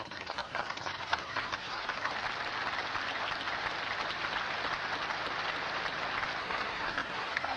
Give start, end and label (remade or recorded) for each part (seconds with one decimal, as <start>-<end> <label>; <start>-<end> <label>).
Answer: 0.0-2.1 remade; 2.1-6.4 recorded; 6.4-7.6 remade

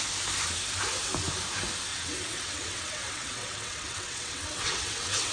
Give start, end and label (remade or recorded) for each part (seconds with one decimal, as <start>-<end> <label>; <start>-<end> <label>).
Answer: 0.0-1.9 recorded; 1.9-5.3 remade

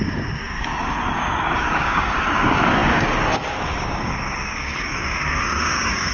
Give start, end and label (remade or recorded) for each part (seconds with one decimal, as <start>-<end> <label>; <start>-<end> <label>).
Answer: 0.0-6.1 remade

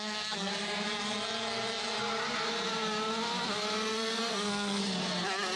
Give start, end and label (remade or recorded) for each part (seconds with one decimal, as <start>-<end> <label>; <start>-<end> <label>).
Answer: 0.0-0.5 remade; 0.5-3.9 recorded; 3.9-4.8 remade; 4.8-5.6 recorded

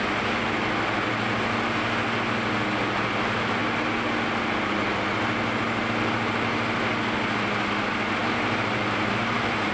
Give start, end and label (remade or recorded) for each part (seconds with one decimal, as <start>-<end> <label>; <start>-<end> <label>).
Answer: 0.0-8.2 recorded; 8.2-9.7 remade

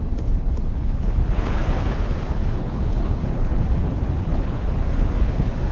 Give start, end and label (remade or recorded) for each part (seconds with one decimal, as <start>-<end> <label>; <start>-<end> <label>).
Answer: 0.0-5.7 remade

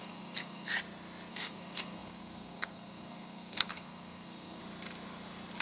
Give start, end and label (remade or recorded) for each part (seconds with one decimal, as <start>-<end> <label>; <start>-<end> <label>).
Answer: 0.0-0.7 remade; 0.7-1.3 recorded; 1.3-4.6 remade; 4.6-5.6 recorded